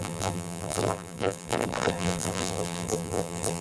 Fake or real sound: fake